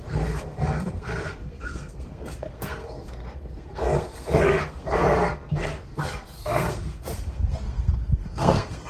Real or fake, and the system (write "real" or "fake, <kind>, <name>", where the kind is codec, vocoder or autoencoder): fake, codec, SNAC